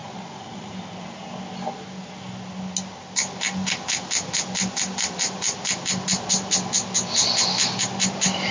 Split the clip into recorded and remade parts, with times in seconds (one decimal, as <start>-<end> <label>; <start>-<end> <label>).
0.0-0.7 remade; 0.7-8.5 recorded